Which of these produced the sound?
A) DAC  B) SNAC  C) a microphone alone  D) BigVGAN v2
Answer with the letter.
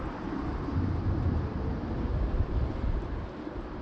D